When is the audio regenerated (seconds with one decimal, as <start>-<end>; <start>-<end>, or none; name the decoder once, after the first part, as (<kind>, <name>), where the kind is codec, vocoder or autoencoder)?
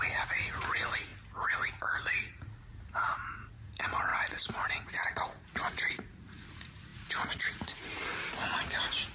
0.0-1.1 (vocoder, Vocos); 1.8-9.1